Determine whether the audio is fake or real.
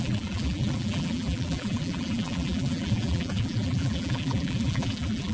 fake